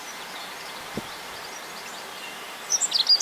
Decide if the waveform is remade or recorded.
recorded